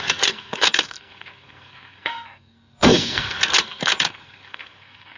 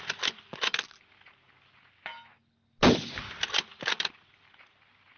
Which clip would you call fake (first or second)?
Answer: first